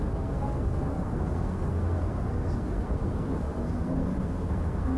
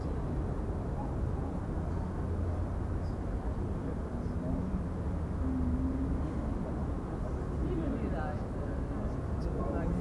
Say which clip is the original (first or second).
second